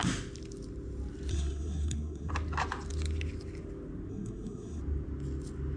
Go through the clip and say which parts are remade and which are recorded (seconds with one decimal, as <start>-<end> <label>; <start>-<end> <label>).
0.0-1.3 recorded; 1.3-2.3 remade; 2.3-4.1 recorded; 4.1-4.8 remade; 4.8-5.8 recorded